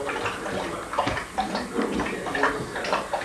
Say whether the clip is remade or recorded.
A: recorded